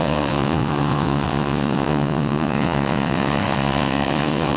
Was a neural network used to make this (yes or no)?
yes